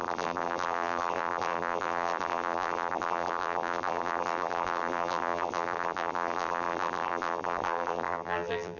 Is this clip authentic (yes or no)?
no